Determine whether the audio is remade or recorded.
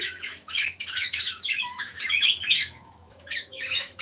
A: remade